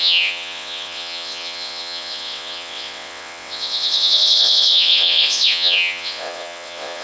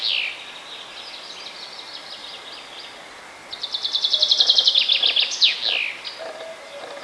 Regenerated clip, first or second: first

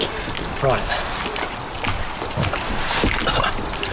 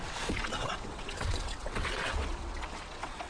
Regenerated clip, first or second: second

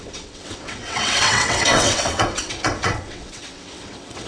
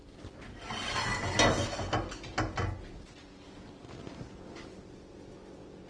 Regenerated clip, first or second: first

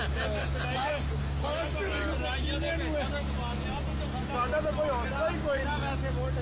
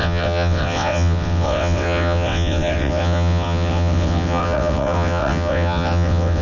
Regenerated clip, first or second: second